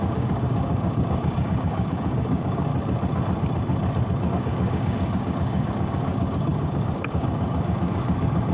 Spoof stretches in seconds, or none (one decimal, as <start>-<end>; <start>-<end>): 0.0-2.7; 4.3-8.5